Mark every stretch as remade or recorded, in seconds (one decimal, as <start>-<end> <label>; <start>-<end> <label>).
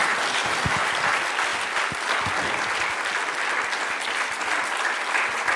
0.0-5.6 recorded